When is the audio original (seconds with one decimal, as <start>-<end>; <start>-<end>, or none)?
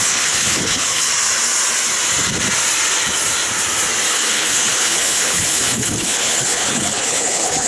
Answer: 1.1-4.1